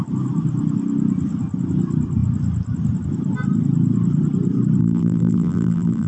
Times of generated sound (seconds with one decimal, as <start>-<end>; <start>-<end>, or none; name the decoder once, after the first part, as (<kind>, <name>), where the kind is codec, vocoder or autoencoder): 4.8-6.1 (vocoder, BigVGAN v2)